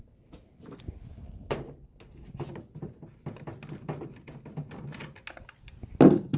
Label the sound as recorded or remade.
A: recorded